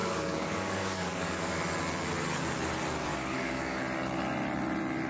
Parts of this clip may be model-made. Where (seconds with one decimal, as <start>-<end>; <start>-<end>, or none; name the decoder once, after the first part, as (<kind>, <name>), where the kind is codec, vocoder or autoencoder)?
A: 0.0-1.6 (codec, DAC); 3.1-3.8